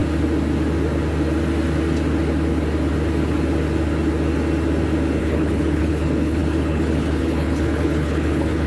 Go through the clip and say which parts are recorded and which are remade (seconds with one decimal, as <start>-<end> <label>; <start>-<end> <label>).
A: 0.0-5.2 recorded; 5.2-8.7 remade